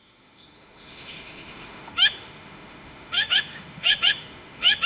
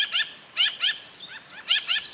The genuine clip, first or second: second